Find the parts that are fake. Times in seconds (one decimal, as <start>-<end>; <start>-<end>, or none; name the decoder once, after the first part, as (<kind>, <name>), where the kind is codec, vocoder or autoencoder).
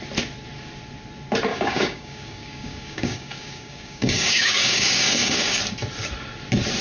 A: 1.5-5.6 (codec, DAC)